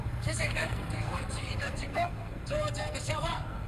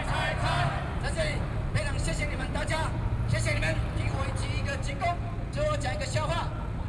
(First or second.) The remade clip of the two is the first